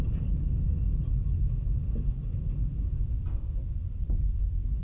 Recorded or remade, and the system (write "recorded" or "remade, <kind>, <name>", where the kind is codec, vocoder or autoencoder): recorded